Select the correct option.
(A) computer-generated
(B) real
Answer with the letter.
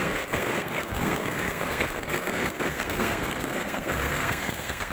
A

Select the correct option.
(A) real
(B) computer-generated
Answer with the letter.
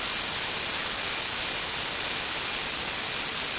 A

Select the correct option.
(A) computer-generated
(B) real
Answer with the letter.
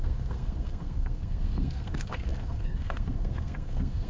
A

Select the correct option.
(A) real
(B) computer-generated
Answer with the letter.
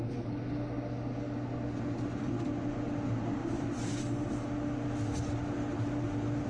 A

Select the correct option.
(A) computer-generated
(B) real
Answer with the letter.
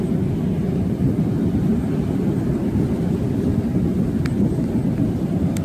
B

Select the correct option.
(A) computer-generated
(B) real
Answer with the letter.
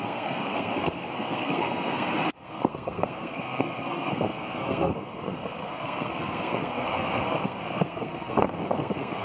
A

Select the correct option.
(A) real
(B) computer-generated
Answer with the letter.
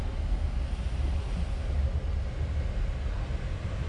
A